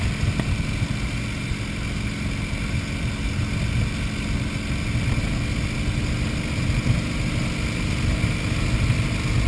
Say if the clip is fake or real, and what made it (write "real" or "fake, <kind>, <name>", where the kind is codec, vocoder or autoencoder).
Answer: real